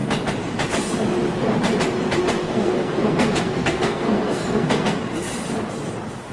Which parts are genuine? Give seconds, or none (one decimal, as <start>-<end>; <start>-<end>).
0.0-2.4; 5.0-6.3